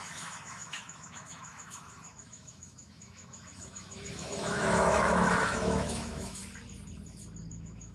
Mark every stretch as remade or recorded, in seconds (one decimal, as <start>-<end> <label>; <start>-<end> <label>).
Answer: 0.0-6.4 remade; 6.4-7.5 recorded; 7.5-7.9 remade